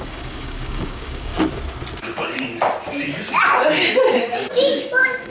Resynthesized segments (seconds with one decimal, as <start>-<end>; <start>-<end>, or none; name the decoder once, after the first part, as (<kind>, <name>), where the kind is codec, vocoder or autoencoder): 0.0-1.3 (codec, DAC); 4.0-5.3